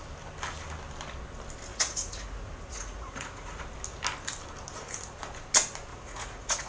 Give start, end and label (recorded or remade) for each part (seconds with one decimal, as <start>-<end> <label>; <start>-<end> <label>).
0.0-1.7 recorded; 1.7-3.6 remade; 3.6-5.9 recorded; 5.9-6.7 remade